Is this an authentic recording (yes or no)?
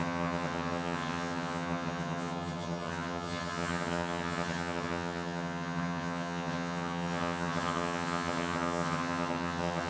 no